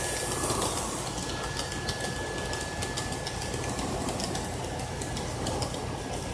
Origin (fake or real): real